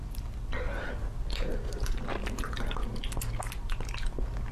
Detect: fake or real real